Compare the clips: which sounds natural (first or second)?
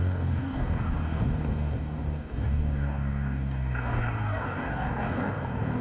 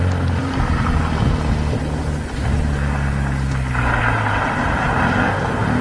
second